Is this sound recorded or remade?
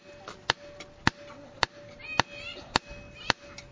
recorded